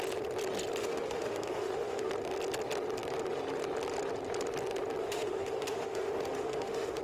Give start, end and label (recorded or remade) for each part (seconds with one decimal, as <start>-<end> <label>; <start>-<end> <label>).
0.0-0.8 recorded; 0.8-2.1 remade; 2.1-5.0 recorded; 5.0-7.0 remade